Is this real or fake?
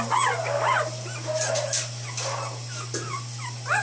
real